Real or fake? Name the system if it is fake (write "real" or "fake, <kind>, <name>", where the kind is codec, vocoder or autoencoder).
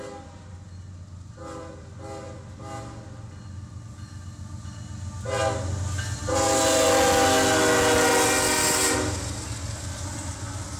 real